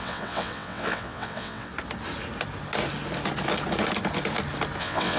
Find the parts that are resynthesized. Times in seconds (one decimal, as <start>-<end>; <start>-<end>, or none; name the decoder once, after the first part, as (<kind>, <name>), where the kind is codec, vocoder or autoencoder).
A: 0.0-1.7 (vocoder, WaveNeXt); 4.8-5.2